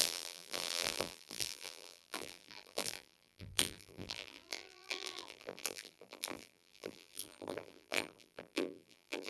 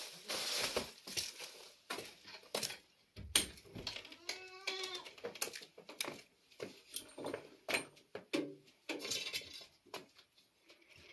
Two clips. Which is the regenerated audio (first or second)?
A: first